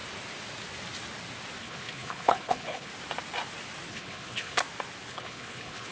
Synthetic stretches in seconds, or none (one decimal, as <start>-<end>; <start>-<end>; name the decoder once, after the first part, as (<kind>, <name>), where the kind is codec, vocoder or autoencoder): 1.6-2.9 (codec, HILCodec); 3.9-4.6; 5.1-5.9